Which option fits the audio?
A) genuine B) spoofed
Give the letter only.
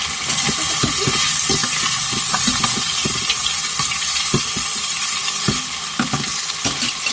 A